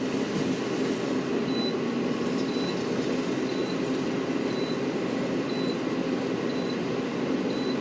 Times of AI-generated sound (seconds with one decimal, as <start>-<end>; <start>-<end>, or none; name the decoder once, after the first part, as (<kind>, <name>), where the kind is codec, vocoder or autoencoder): none